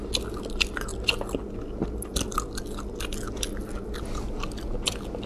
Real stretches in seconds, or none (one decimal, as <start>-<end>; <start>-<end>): 0.0-5.3